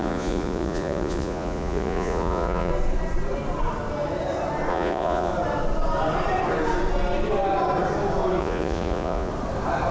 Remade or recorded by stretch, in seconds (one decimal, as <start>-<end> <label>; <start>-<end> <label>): 0.0-2.7 remade; 2.7-4.7 recorded; 4.7-5.3 remade; 5.3-8.4 recorded; 8.4-9.3 remade; 9.3-9.9 recorded